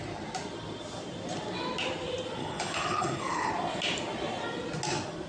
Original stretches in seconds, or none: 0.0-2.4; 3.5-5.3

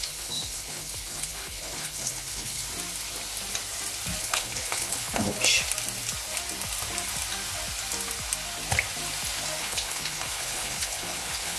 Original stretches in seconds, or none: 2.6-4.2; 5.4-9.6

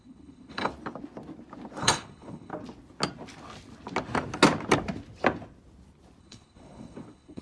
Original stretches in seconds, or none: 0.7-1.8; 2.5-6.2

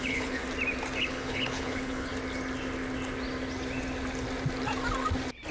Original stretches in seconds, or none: 0.4-1.0; 2.1-5.5

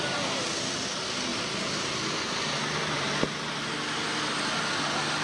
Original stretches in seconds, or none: 0.0-5.2

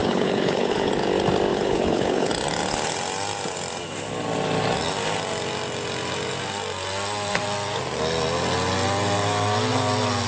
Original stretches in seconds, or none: 0.9-1.5; 2.3-10.3

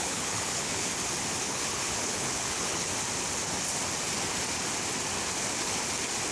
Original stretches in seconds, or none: 0.9-1.4; 2.9-6.3